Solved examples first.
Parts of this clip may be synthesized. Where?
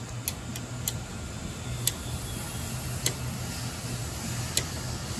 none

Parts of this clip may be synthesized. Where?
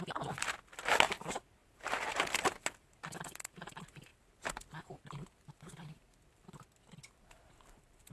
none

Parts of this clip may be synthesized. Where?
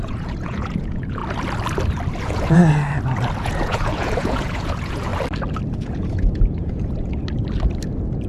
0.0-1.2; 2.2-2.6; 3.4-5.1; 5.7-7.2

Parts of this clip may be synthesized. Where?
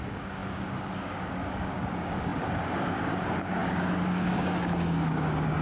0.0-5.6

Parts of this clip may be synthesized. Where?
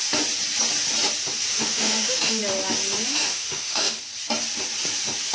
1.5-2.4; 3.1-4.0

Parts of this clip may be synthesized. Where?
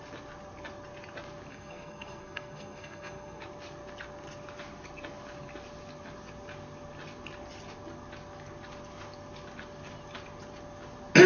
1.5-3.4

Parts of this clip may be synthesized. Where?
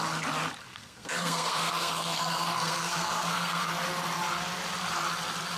0.7-3.7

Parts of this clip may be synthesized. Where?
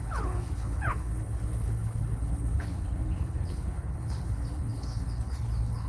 0.0-5.9